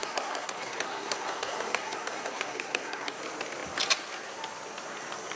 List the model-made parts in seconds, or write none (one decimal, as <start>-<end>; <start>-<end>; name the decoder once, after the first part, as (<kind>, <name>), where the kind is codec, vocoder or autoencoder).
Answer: 0.0-3.2 (codec, SNAC)